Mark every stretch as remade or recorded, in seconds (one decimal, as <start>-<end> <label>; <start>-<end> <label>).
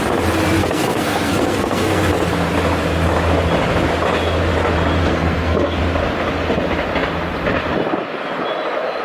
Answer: 0.0-0.6 recorded; 0.6-2.1 remade; 2.1-5.0 recorded; 5.0-5.8 remade; 5.8-9.0 recorded